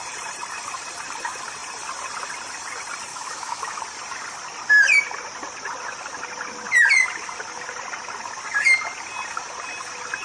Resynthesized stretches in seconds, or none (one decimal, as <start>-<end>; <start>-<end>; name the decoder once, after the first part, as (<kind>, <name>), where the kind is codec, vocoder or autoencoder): 3.1-3.8 (autoencoder, DAC-VAE)

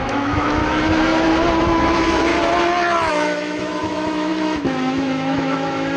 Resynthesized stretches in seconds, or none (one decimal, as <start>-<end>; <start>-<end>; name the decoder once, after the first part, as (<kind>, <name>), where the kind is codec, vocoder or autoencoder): 0.0-0.6 (autoencoder, DAC-VAE); 1.6-2.3; 3.1-6.0